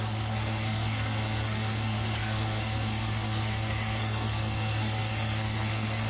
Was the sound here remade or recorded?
remade